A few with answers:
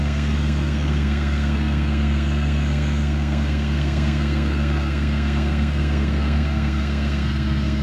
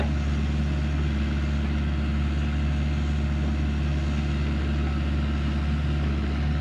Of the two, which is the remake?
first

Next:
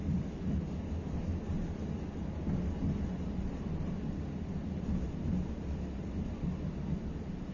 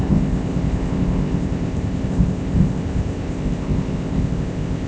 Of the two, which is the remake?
second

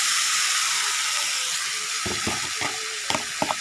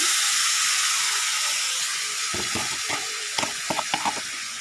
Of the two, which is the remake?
second